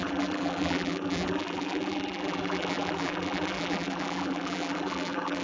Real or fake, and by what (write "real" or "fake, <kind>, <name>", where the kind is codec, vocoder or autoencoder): fake, vocoder, BigVGAN v2